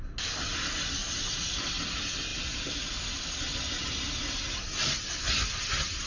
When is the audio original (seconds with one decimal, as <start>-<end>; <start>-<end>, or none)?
0.0-1.0; 1.7-6.1

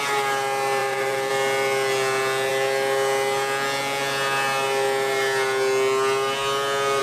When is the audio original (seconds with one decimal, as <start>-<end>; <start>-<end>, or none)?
0.0-0.8; 1.3-7.0

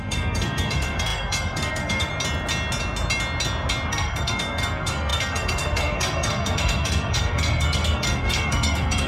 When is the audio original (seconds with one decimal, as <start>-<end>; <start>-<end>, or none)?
2.1-3.9

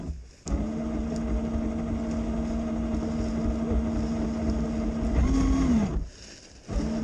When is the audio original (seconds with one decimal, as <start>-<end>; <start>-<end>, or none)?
0.0-7.0

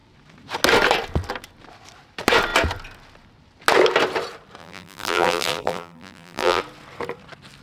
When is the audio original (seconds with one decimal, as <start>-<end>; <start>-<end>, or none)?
0.0-4.6; 6.6-7.6

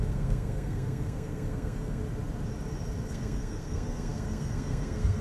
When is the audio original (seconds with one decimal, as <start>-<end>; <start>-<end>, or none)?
2.0-3.1

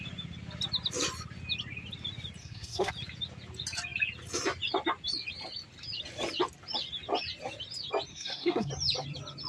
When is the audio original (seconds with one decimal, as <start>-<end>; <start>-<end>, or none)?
0.0-2.4; 2.9-8.1; 8.7-9.5